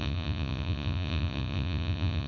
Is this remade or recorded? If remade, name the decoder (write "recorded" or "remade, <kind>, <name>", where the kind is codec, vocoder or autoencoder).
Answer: remade, vocoder, Vocos